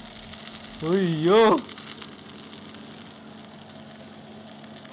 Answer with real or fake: real